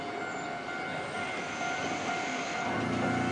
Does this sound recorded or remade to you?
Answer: recorded